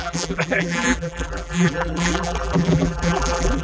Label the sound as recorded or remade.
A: remade